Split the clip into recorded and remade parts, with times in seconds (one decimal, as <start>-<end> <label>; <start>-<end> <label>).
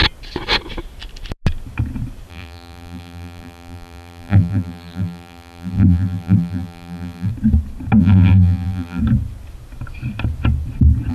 0.0-2.3 recorded; 2.3-7.3 remade; 7.3-8.0 recorded; 8.0-9.0 remade; 9.0-11.1 recorded